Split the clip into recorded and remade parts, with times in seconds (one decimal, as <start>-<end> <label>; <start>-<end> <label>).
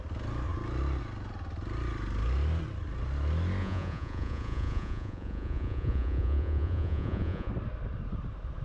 0.0-3.6 recorded; 3.6-7.5 remade; 7.5-8.6 recorded